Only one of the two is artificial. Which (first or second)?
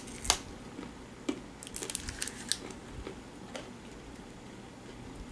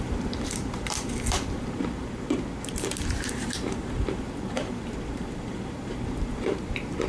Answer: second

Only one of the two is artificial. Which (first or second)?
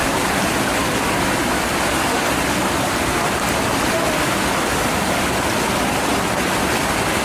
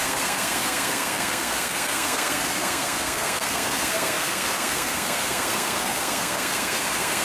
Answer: second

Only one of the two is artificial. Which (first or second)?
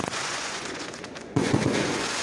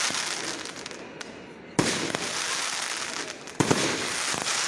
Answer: first